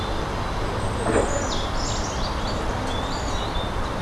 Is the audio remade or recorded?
recorded